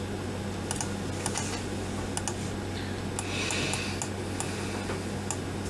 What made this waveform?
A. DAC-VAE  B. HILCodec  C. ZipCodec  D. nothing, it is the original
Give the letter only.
D